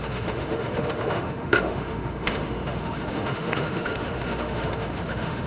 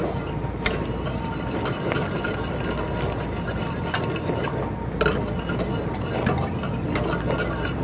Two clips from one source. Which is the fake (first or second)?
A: first